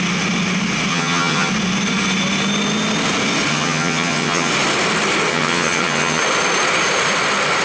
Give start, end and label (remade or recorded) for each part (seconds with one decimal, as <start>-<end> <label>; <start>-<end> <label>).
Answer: 0.0-0.9 recorded; 0.9-1.5 remade; 1.5-3.5 recorded; 3.5-4.5 remade; 4.5-5.3 recorded; 5.3-6.2 remade; 6.2-7.6 recorded